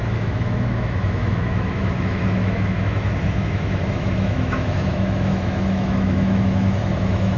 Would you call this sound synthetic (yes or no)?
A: yes